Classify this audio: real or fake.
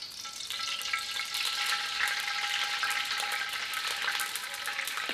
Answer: real